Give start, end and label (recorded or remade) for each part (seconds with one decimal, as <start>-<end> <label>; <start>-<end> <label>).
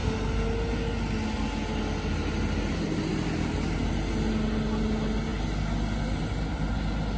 0.0-7.2 recorded